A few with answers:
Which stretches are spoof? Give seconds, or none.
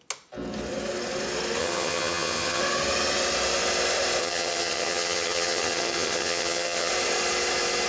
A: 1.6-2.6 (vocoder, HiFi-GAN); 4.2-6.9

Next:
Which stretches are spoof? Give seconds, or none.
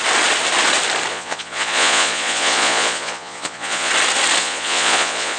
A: 1.1-3.9 (vocoder, Vocos); 4.4-5.4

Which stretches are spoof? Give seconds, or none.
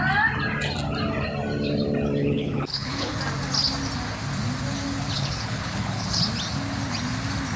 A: 2.2-3.2 (codec, HILCodec); 5.1-6.2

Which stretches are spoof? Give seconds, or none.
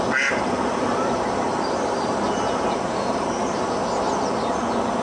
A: 0.7-3.7 (vocoder, BigVGAN v2)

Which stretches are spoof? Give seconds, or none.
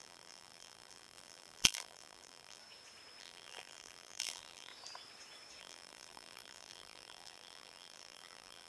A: 0.0-2.6 (vocoder, BigVGAN v2); 3.2-4.7; 5.6-8.7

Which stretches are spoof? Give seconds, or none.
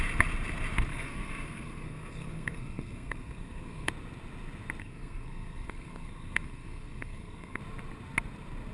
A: 0.9-3.9 (codec, SNAC); 4.8-7.6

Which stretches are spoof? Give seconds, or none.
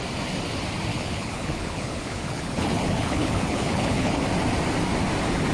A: 0.9-4.2 (codec, HILCodec)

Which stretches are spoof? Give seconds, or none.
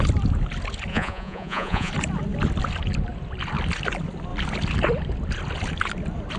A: 0.9-1.9 (vocoder, Vocos)